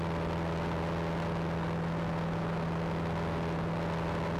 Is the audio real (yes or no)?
yes